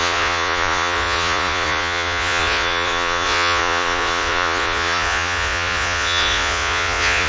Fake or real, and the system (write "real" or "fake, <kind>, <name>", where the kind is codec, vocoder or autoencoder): fake, vocoder, Vocos